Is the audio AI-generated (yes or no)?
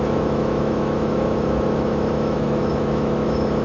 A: yes